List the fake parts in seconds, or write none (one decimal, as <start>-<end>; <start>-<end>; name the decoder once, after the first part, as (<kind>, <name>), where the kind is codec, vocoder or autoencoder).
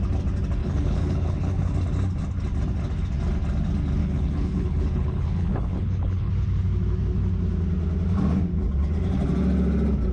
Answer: 0.6-1.7 (codec, HILCodec); 4.0-6.3